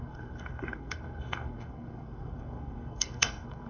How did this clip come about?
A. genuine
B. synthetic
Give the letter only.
B